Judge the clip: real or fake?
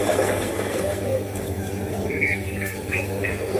fake